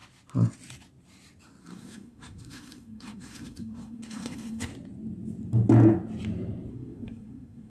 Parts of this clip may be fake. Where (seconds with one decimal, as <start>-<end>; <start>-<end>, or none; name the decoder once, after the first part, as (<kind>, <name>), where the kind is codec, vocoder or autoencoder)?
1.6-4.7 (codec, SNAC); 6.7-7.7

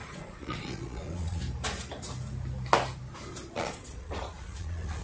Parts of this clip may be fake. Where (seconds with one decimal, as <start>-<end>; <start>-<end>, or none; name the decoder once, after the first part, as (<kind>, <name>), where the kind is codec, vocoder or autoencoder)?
0.0-1.4 (vocoder, Vocos); 3.5-5.0

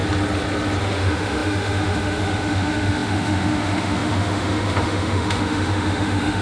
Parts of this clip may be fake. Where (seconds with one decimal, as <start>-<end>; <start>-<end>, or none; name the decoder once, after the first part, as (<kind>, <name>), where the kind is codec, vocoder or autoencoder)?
0.8-6.4 (autoencoder, DAC-VAE)